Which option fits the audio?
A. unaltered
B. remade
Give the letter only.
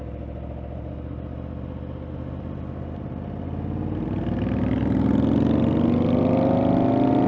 A